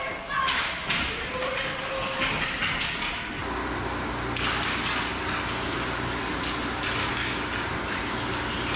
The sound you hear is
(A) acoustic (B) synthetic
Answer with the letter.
A